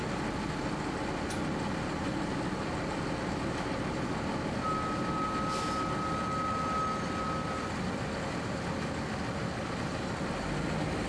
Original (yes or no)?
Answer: yes